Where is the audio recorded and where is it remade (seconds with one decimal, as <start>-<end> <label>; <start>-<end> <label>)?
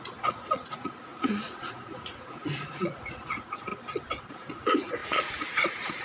0.0-3.7 remade; 3.7-4.3 recorded; 4.3-6.0 remade